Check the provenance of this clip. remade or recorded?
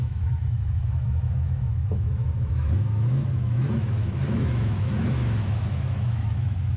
remade